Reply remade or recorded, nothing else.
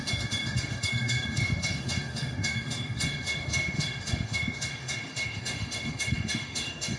remade